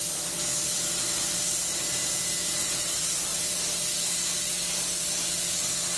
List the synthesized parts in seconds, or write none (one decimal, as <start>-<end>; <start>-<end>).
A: none